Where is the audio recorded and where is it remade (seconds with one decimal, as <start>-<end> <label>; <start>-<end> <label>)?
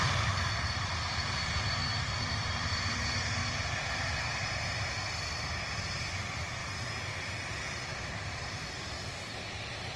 0.0-3.4 remade; 3.4-5.6 recorded; 5.6-6.6 remade; 6.6-7.7 recorded; 7.7-9.3 remade; 9.3-10.0 recorded